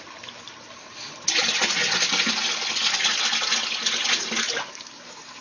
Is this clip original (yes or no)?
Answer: yes